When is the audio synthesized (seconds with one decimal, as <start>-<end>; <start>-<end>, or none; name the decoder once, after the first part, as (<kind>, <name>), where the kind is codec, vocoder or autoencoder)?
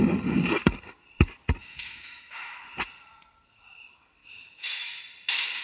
1.6-2.6 (autoencoder, DAC-VAE); 4.2-5.0